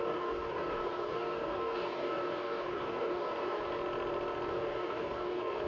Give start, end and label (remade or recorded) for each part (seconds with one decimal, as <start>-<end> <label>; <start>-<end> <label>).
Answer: 0.0-3.6 remade; 3.6-4.5 recorded; 4.5-5.7 remade